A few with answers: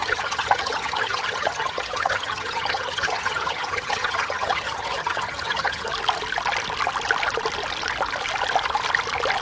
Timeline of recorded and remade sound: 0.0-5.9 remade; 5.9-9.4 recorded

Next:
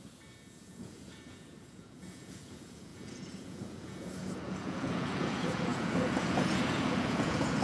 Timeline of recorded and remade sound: 0.0-7.6 remade

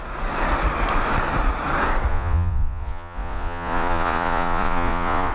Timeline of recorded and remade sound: 0.0-2.1 recorded; 2.1-5.3 remade

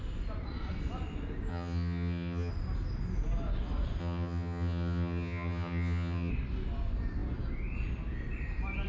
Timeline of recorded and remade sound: 0.0-1.5 recorded; 1.5-2.5 remade; 2.5-4.0 recorded; 4.0-6.3 remade; 6.3-8.9 recorded